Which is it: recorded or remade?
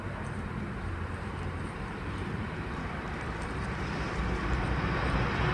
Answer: remade